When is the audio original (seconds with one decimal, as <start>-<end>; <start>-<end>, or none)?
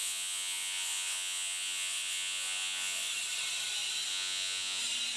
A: 3.1-4.1; 4.8-5.2